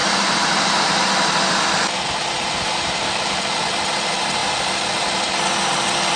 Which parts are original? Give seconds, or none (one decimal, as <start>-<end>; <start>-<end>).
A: 3.6-6.2